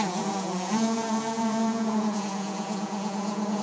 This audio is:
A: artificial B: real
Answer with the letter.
A